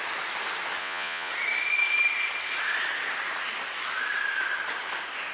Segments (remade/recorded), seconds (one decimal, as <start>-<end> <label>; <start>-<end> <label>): 0.0-0.8 recorded; 0.8-1.3 remade; 1.3-5.3 recorded